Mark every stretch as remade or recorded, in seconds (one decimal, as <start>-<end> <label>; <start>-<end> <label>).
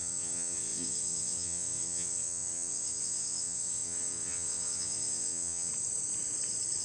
0.0-5.7 remade; 5.7-6.8 recorded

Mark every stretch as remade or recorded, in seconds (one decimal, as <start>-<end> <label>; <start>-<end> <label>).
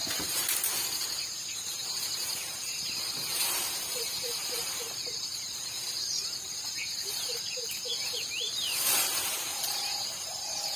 0.0-10.8 remade